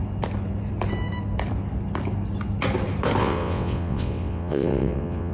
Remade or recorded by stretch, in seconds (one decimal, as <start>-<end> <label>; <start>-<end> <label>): 0.0-3.2 recorded; 3.2-5.3 remade